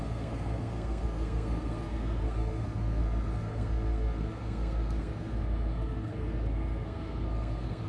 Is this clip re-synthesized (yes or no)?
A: yes